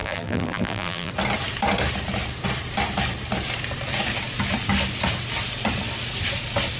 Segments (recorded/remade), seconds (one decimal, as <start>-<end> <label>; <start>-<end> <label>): 0.0-1.1 remade; 1.1-6.8 recorded

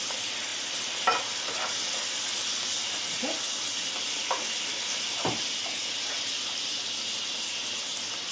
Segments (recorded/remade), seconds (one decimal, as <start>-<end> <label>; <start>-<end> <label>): 0.0-8.3 recorded

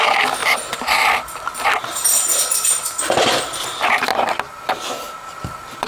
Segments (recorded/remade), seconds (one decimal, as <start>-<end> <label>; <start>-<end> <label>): 0.0-0.4 remade; 0.4-3.0 recorded; 3.0-4.1 remade; 4.1-4.9 recorded; 4.9-5.9 remade

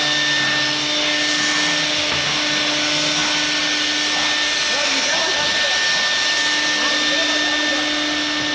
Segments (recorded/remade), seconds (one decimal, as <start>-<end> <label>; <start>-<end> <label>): 0.0-8.5 recorded

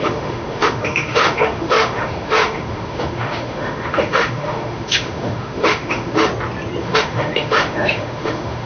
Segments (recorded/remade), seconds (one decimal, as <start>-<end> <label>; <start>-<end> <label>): 0.0-6.3 remade; 6.3-6.8 recorded; 6.8-8.7 remade

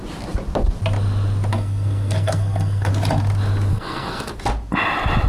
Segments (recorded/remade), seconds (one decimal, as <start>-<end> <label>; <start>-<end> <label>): 0.0-1.5 recorded; 1.5-2.9 remade; 2.9-3.7 recorded; 3.7-4.3 remade; 4.3-5.3 recorded